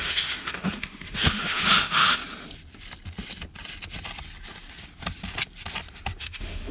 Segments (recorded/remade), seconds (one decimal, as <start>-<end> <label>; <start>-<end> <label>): 0.0-2.2 remade; 2.2-6.2 recorded; 6.2-6.7 remade

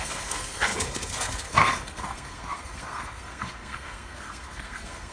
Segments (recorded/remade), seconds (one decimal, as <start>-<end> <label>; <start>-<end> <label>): 0.0-5.1 remade

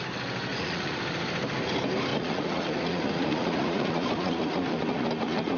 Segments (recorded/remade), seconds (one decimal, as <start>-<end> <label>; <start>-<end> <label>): 0.0-0.5 recorded; 0.5-1.0 remade; 1.0-2.1 recorded; 2.1-5.6 remade